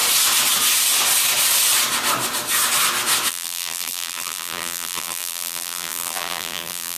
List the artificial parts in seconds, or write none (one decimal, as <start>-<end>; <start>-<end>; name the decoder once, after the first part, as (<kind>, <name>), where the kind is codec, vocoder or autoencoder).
3.3-7.0 (vocoder, BigVGAN v2)